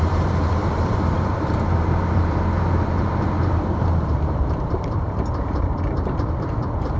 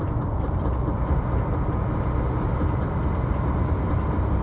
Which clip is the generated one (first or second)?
first